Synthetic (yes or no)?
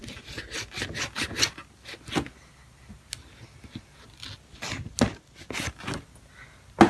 no